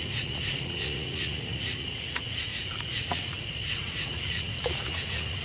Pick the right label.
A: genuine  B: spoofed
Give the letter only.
B